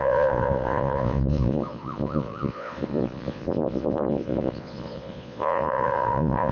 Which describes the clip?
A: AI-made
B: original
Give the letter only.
A